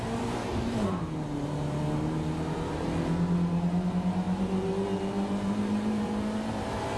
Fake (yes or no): yes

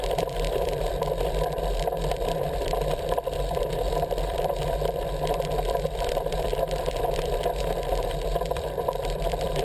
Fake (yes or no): yes